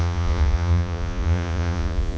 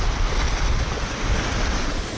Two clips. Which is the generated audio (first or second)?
first